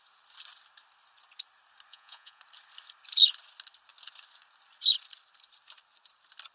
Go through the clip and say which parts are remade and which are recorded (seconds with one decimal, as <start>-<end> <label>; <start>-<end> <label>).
0.0-1.9 recorded; 1.9-2.4 remade; 2.4-6.5 recorded